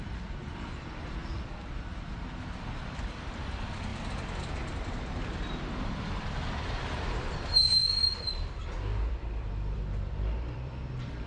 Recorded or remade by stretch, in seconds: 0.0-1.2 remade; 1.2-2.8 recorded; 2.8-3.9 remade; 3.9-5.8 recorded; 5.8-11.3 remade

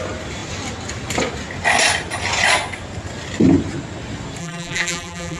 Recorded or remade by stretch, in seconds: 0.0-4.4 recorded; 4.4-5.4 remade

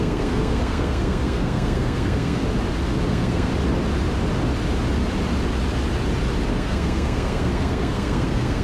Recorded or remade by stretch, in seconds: 0.0-2.4 remade; 2.4-3.1 recorded; 3.1-3.5 remade; 3.5-6.5 recorded; 6.5-8.6 remade

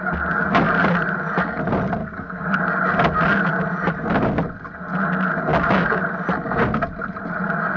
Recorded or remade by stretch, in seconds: 0.0-2.0 recorded; 2.0-2.6 remade; 2.6-5.5 recorded; 5.5-6.0 remade; 6.0-7.8 recorded